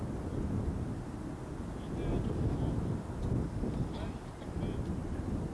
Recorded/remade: recorded